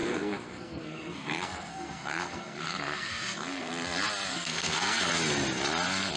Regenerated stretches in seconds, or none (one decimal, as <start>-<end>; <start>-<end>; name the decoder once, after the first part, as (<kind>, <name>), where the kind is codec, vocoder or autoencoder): 0.0-3.7 (codec, SNAC); 4.3-5.1